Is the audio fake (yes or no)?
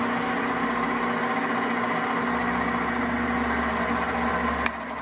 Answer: no